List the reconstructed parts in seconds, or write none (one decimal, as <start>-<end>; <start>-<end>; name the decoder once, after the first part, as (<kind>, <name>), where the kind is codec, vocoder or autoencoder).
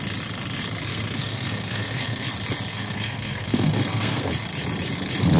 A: 0.9-2.3 (codec, SNAC); 2.7-4.3